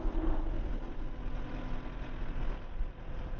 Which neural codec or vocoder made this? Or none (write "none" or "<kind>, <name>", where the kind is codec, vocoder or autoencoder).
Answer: none